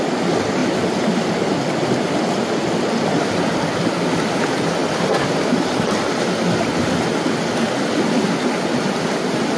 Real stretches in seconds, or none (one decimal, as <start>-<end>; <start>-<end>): 0.0-9.6